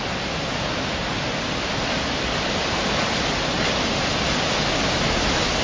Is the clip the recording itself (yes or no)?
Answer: yes